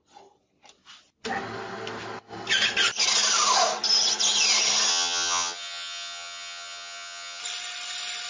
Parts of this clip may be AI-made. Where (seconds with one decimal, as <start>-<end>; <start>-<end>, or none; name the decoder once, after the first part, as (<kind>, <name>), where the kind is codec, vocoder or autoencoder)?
4.9-7.4 (vocoder, HiFi-GAN)